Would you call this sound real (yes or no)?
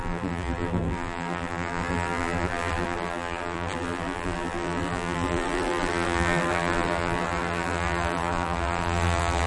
no